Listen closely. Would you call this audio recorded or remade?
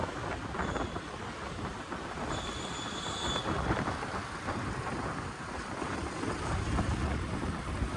recorded